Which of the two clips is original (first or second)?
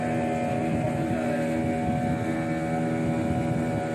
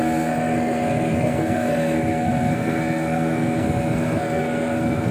first